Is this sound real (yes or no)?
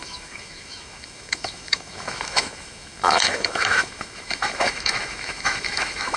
no